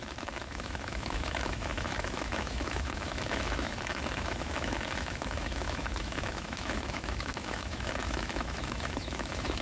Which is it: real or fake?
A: fake